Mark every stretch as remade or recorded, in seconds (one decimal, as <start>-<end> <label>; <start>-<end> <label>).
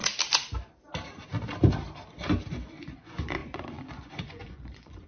0.0-2.8 recorded; 2.8-5.1 remade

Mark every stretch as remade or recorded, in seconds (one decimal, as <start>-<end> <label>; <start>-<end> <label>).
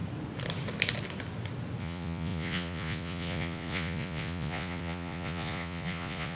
0.0-1.8 recorded; 1.8-6.4 remade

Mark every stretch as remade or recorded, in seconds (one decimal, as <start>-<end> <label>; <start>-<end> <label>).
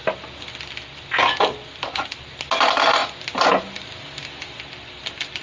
0.0-5.4 recorded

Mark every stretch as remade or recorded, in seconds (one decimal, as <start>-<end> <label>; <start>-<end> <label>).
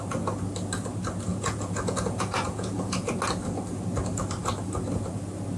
0.0-1.3 recorded; 1.3-3.1 remade; 3.1-5.6 recorded